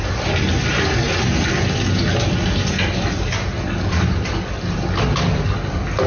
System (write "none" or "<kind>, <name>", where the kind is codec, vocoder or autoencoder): none